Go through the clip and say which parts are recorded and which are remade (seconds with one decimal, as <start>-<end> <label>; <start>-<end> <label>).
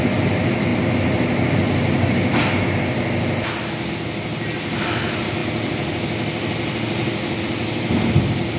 0.0-8.6 recorded